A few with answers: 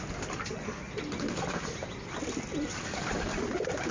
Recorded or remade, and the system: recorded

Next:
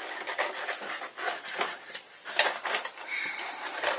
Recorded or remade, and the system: recorded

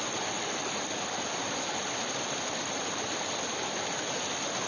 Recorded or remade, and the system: recorded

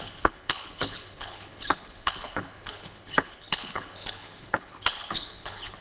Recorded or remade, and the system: remade, codec, HILCodec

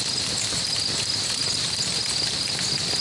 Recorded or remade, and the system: recorded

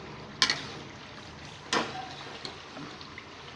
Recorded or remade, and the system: recorded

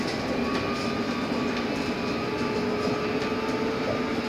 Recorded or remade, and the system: recorded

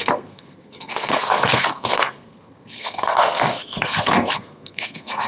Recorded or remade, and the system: remade, codec, SNAC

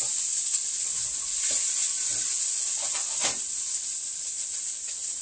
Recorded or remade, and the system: recorded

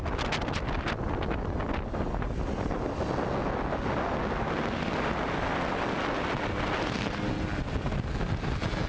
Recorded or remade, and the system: recorded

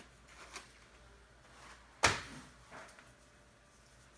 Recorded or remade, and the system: recorded